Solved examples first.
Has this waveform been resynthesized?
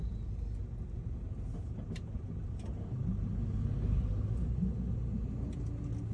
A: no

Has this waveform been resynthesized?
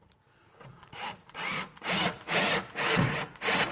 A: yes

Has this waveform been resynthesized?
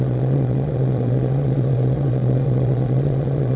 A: yes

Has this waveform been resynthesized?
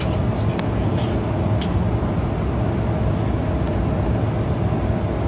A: no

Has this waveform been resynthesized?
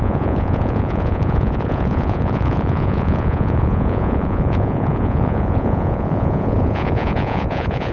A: yes